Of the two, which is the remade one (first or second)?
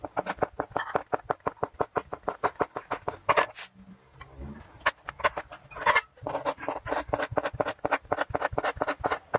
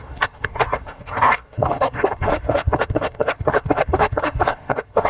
second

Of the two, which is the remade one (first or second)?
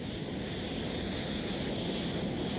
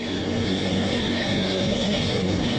second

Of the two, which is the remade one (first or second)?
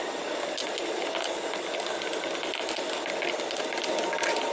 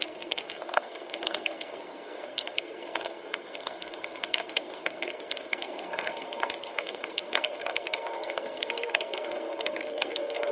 second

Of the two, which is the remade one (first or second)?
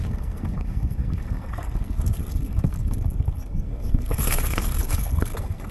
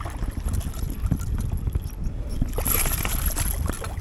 first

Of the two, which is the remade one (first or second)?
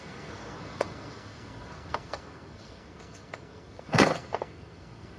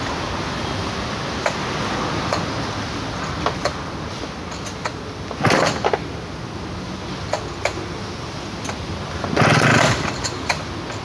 first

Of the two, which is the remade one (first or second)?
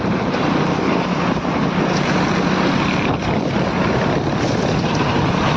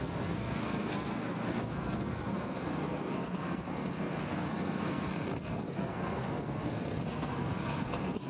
second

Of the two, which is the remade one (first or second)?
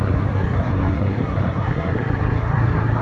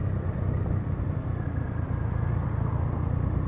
first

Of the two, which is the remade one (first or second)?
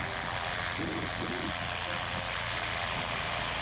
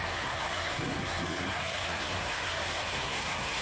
second